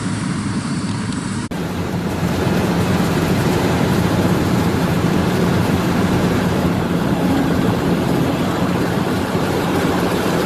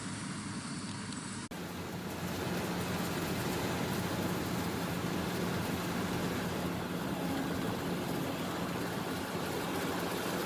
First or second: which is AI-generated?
first